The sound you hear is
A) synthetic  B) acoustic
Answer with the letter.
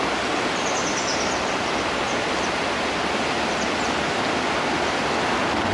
B